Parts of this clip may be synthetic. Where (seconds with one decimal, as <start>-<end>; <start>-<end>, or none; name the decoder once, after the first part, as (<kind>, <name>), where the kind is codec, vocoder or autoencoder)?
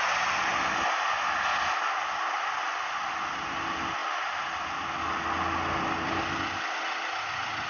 none